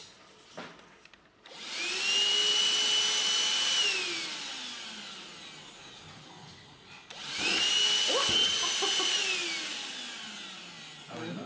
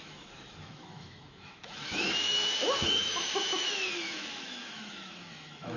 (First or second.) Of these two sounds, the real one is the first